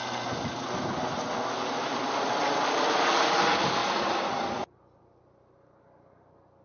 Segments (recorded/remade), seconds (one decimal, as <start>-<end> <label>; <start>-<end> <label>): 0.0-6.6 recorded